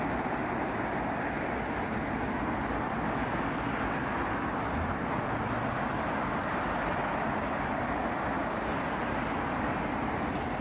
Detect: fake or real real